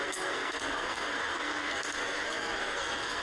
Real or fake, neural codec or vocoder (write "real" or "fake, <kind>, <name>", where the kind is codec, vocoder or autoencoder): fake, codec, SNAC